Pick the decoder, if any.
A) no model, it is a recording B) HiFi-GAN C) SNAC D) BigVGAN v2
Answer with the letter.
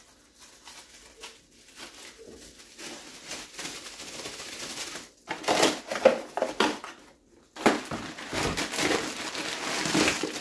A